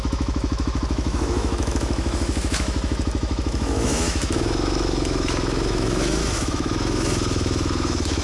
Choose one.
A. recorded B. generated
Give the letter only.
B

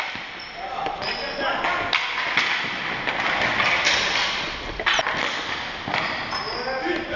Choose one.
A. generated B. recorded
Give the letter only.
B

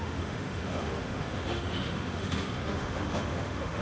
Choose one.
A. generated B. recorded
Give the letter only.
A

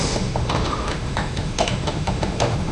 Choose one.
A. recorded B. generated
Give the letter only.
B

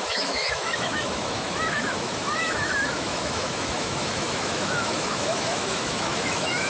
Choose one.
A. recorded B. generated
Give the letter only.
B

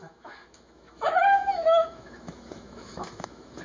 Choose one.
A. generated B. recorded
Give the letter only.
A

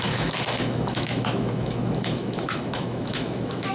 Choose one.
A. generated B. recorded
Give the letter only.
A